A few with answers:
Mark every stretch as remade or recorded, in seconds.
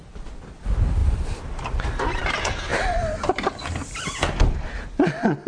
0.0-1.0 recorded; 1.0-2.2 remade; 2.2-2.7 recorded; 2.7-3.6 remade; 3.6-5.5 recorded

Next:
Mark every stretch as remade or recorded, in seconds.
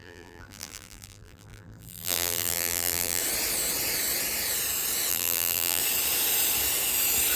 0.0-3.2 remade; 3.2-5.1 recorded; 5.1-5.8 remade; 5.8-7.4 recorded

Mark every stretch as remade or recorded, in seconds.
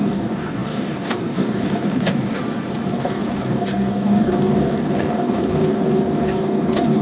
0.0-2.4 remade; 2.4-2.9 recorded; 2.9-7.0 remade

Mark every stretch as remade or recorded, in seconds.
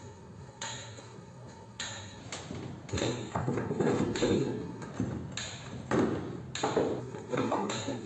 0.0-2.2 remade; 2.2-2.9 recorded; 2.9-4.9 remade; 4.9-7.0 recorded; 7.0-8.1 remade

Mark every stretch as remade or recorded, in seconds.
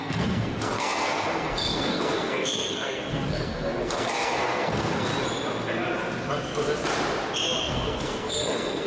0.0-5.1 remade; 5.1-7.6 recorded; 7.6-8.9 remade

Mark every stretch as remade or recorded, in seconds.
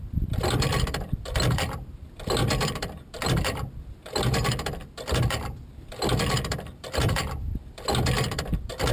0.0-8.9 remade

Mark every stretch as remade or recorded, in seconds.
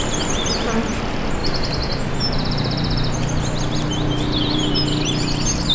0.0-5.7 recorded